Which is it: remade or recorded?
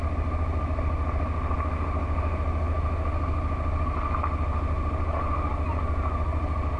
recorded